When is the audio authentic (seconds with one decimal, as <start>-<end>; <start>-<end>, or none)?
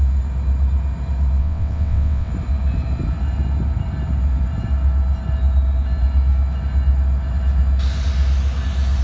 0.0-1.4; 2.3-9.0